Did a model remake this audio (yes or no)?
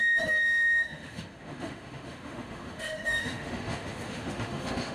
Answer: yes